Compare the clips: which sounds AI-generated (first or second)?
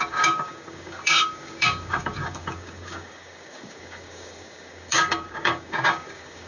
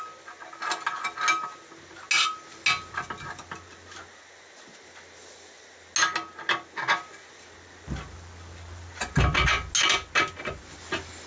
first